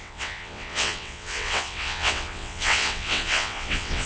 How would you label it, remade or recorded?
remade